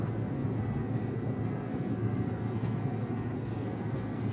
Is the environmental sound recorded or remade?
remade